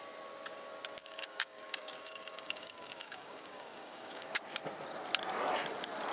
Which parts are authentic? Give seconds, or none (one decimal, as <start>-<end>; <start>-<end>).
0.0-1.0; 4.4-6.1